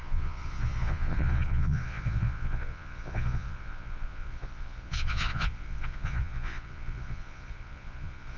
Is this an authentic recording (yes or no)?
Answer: no